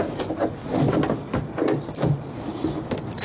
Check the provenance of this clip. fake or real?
real